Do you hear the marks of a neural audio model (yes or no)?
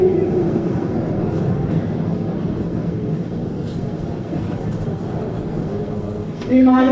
yes